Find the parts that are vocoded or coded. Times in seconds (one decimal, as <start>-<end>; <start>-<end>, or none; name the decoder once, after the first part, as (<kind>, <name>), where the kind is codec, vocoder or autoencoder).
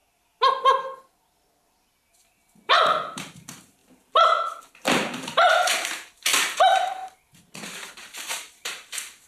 2.5-7.0 (vocoder, BigVGAN v2); 7.9-9.3